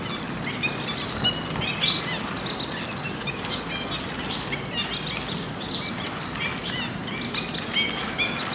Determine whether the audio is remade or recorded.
recorded